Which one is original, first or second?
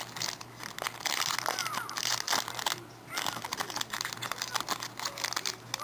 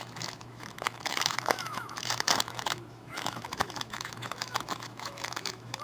first